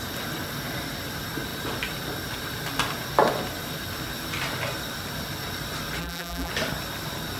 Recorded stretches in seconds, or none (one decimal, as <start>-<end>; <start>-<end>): 0.0-6.0; 6.5-7.4